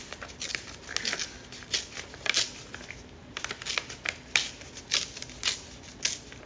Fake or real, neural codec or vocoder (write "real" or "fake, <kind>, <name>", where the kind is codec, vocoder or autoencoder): real